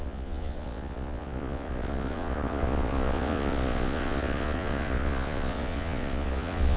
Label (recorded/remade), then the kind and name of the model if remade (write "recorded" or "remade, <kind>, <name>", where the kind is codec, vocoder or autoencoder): remade, vocoder, Vocos